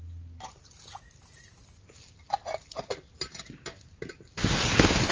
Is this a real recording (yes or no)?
yes